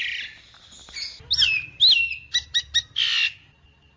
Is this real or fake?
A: real